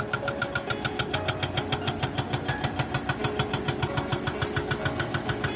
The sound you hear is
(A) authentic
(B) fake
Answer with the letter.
A